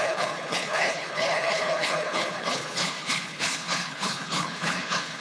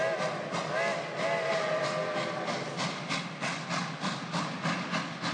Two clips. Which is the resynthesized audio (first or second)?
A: first